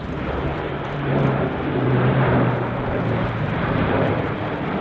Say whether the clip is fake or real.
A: fake